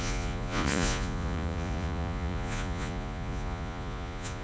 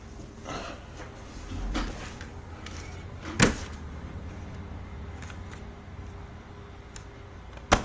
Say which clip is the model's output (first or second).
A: first